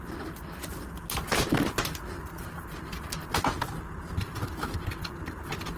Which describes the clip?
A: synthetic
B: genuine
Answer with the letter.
B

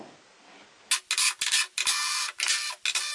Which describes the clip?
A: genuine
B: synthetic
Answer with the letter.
A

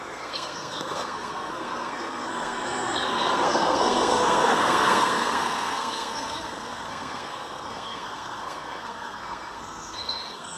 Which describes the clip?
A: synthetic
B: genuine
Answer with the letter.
A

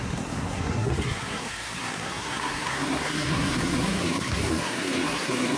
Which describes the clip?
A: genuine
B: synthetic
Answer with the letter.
B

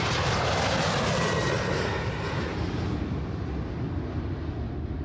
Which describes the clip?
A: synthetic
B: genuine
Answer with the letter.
B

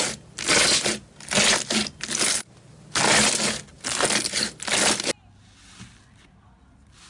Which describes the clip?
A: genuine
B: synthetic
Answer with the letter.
A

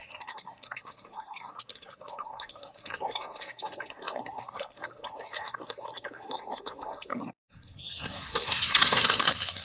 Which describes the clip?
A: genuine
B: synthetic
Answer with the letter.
B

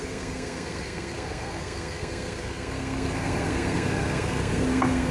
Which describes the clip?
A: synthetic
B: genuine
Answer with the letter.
A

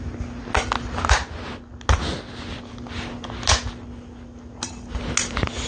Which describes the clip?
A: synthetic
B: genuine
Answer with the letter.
B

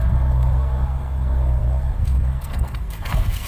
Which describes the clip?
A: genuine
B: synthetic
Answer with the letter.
B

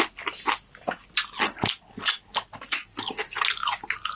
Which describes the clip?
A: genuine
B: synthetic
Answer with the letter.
A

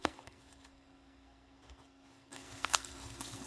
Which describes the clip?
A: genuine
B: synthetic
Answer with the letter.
B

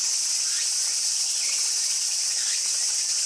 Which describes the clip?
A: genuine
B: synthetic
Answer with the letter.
A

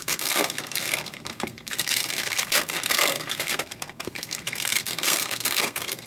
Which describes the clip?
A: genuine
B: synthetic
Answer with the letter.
B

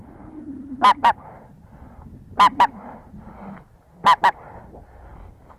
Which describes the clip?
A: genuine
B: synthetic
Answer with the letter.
A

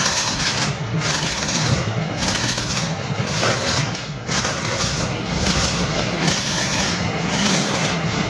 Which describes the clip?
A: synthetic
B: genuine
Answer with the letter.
A